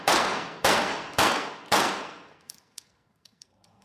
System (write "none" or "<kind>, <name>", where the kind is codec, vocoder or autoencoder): codec, SNAC